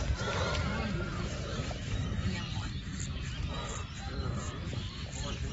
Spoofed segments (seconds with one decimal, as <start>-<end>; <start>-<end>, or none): 4.2-5.5